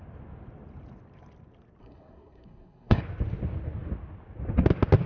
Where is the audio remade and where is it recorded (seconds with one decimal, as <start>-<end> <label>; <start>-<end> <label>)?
0.0-1.8 recorded; 1.8-3.0 remade; 3.0-5.1 recorded